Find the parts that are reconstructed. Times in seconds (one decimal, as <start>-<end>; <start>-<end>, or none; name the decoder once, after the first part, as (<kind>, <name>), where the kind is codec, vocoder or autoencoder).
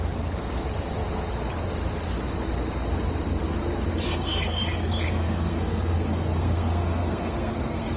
4.1-8.0 (codec, SNAC)